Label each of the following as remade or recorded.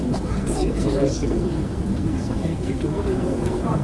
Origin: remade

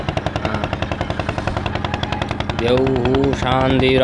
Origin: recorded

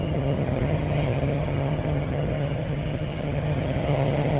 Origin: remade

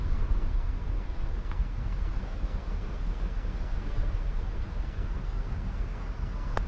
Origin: remade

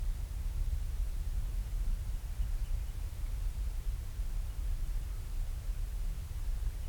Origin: remade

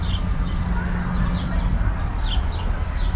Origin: recorded